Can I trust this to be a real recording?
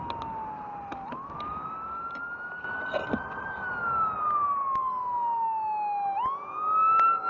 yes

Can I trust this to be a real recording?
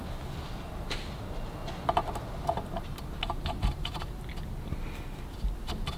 yes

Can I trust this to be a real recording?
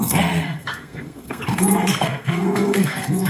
no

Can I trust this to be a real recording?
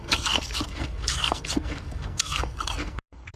no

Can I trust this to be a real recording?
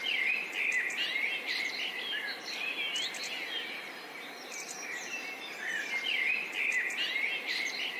yes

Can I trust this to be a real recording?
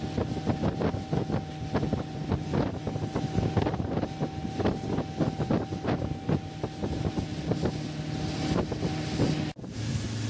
yes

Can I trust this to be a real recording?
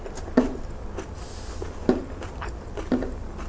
yes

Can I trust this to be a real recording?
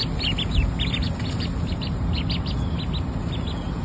yes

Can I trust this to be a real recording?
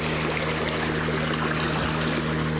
yes